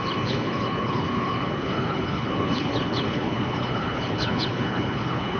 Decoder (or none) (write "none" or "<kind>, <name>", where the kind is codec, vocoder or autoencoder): codec, HILCodec